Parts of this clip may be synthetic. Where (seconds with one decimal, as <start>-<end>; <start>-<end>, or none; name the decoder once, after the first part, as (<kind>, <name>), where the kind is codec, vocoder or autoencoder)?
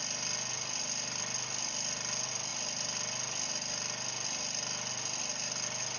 none